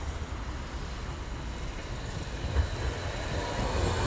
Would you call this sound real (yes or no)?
yes